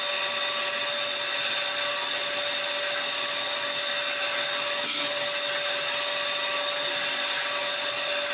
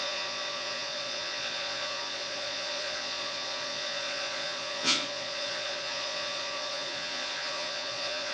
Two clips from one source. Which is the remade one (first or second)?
second